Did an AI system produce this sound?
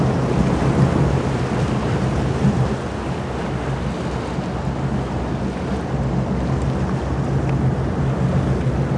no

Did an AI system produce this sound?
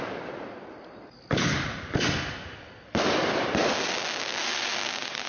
no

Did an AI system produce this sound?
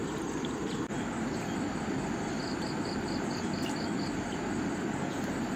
no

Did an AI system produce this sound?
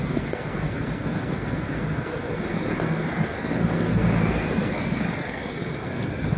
yes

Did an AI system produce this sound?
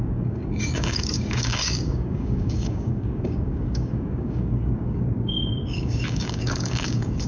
yes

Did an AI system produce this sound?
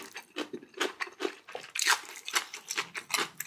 no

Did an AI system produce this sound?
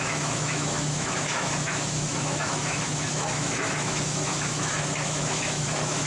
yes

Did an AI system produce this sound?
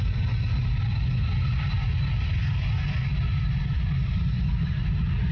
no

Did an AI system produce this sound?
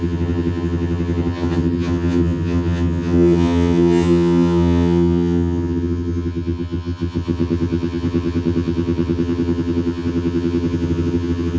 yes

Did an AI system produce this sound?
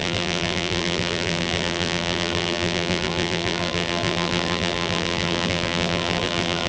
yes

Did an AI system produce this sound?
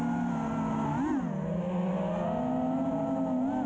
no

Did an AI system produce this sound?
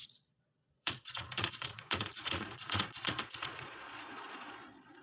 yes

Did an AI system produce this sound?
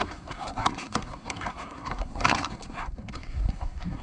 yes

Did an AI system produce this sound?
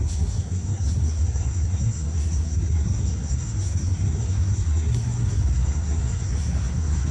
yes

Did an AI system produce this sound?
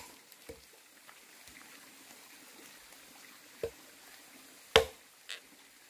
no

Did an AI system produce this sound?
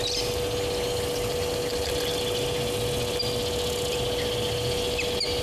no